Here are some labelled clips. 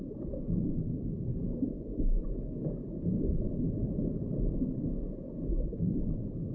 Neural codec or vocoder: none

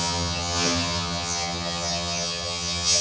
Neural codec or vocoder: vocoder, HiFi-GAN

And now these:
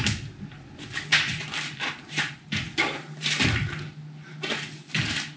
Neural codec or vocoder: none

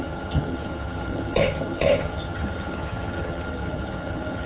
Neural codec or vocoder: vocoder, HiFi-GAN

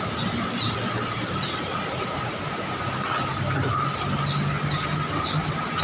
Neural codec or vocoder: none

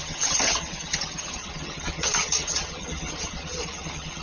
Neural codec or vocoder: vocoder, HiFi-GAN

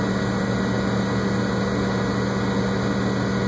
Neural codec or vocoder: none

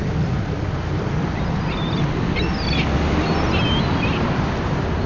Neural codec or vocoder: none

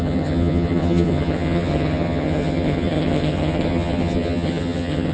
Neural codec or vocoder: vocoder, HiFi-GAN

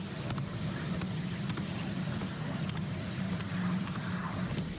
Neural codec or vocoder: none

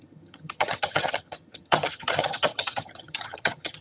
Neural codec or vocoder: vocoder, HiFi-GAN